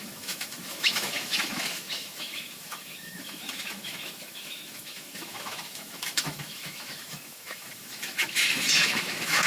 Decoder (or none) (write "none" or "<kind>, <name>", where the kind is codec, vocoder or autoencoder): autoencoder, DAC-VAE